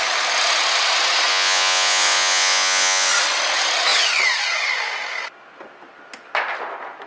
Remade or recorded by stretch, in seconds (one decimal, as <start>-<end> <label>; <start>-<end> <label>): 0.0-1.3 recorded; 1.3-3.1 remade; 3.1-7.1 recorded